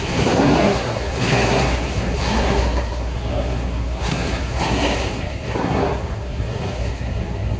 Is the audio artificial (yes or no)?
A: yes